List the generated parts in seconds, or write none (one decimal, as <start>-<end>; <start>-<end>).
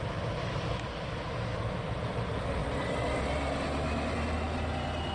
none